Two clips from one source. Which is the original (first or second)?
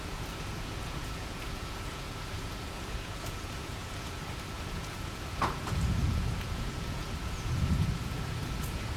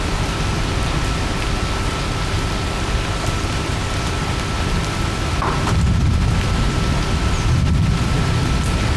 second